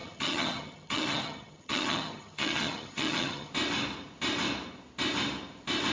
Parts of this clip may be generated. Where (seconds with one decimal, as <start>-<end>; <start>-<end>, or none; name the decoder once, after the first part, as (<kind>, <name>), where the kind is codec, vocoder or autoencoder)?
0.0-3.5 (vocoder, HiFi-GAN)